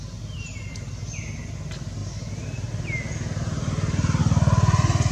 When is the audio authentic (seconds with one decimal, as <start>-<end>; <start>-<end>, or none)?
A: 0.0-5.1